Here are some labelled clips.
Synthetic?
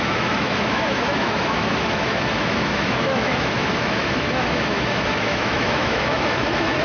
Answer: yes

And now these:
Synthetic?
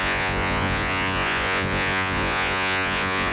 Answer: yes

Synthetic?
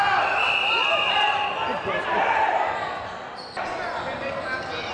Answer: no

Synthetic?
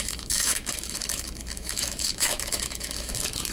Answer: yes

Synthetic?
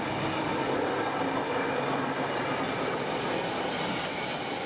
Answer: no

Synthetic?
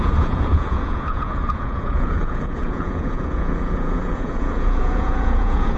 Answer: yes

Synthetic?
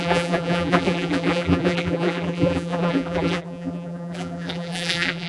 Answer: yes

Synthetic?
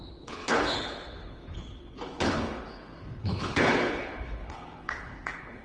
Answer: yes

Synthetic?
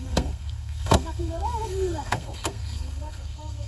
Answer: yes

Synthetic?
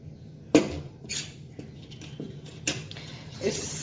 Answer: no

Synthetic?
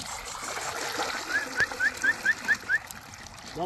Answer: no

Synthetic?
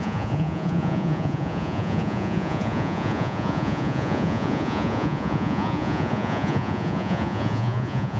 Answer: yes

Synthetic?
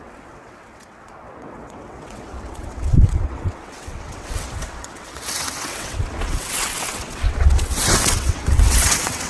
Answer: yes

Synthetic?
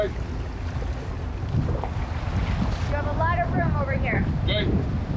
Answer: no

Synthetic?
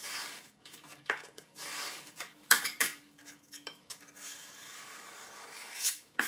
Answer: yes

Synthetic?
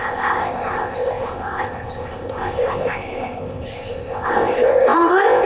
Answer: yes